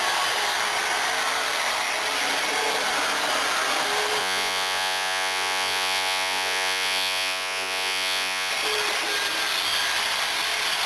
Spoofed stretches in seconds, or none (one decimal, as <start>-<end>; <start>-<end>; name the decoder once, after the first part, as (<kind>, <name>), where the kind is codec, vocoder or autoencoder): 4.2-8.5 (vocoder, Vocos)